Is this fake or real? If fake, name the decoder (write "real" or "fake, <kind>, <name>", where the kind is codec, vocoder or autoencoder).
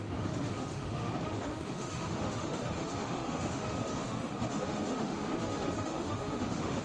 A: fake, autoencoder, DAC-VAE